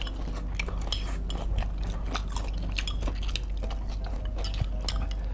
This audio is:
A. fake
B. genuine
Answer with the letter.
B